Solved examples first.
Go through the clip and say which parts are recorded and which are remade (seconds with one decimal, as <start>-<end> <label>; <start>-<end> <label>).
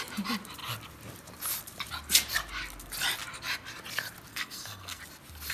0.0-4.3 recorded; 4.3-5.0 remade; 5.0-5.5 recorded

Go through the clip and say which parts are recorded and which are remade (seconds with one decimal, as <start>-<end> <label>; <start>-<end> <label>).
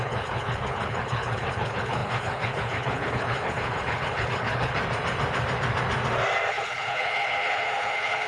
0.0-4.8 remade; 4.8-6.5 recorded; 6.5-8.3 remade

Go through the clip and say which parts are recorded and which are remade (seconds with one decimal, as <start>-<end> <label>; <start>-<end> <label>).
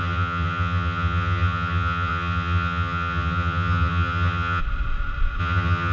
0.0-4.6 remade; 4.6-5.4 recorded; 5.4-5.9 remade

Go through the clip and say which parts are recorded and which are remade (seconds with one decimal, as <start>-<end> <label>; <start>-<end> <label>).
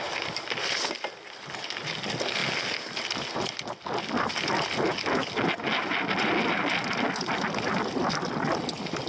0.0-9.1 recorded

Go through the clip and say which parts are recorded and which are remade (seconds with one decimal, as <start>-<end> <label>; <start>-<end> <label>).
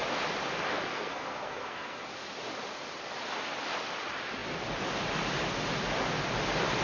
0.0-0.9 recorded; 0.9-2.0 remade; 2.0-6.8 recorded